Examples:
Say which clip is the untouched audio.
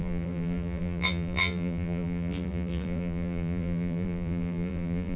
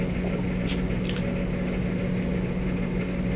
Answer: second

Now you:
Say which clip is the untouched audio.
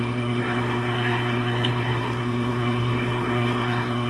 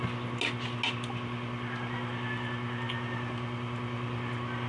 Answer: second